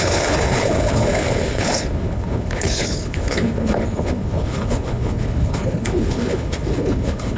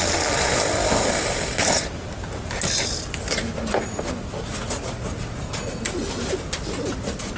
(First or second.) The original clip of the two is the second